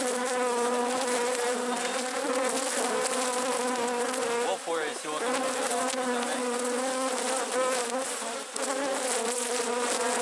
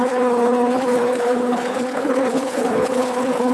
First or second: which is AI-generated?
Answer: second